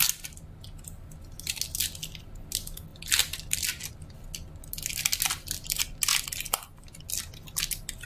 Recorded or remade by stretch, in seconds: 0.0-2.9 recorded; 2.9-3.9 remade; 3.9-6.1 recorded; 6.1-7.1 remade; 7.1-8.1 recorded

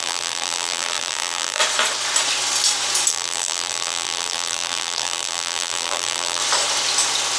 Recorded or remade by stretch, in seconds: 0.0-1.6 remade; 1.6-3.1 recorded; 3.1-6.4 remade; 6.4-7.4 recorded